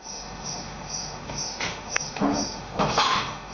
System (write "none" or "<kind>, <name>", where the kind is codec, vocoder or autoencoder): autoencoder, DAC-VAE